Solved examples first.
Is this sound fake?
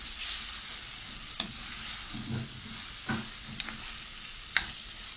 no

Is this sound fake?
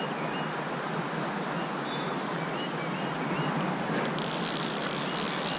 no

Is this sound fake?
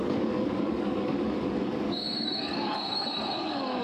yes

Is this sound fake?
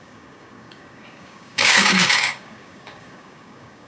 yes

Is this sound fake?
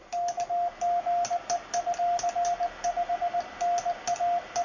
no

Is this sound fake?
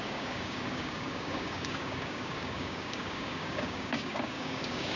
yes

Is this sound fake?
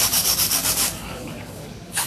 yes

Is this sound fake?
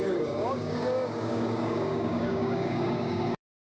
yes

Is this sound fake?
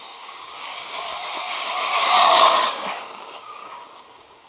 yes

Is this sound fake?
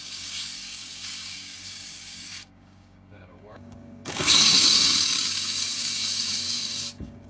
yes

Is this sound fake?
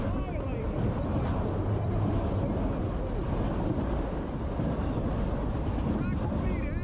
no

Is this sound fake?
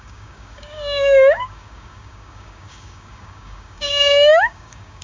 yes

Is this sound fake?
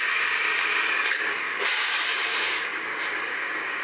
yes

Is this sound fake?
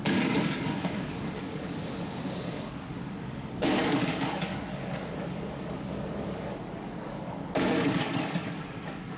yes